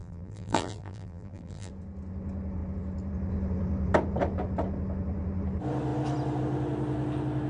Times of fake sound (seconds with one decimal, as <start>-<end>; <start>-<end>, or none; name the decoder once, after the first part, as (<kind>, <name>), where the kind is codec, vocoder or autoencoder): 0.0-1.7 (vocoder, BigVGAN v2)